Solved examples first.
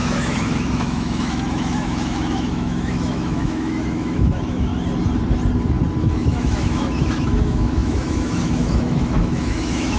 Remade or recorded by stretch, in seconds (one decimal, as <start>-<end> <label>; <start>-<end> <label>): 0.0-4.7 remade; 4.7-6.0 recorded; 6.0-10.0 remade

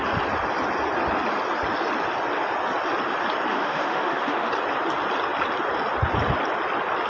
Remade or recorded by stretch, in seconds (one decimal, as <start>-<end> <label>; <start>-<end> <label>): 0.0-3.5 recorded; 3.5-4.5 remade; 4.5-7.1 recorded

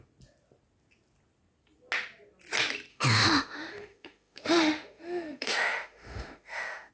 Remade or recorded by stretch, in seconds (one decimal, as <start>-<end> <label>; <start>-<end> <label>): 0.0-2.9 recorded; 2.9-6.9 remade

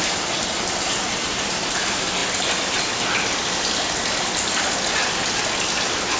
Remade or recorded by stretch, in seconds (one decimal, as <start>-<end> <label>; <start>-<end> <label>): 0.0-6.2 recorded

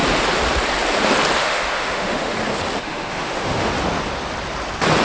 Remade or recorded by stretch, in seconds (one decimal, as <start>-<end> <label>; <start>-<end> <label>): 0.0-1.4 recorded; 1.4-2.3 remade; 2.3-2.8 recorded; 2.8-3.7 remade; 3.7-5.0 recorded